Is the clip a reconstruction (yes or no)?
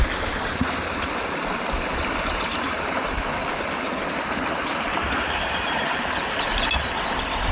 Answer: no